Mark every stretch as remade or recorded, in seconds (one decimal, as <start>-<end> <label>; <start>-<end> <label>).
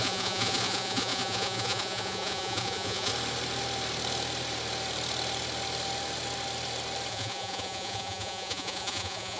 0.0-3.1 remade; 3.1-7.1 recorded; 7.1-9.4 remade